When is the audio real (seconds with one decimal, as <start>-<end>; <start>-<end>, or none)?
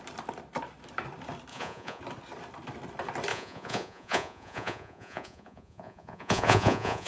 0.0-1.5; 2.0-3.3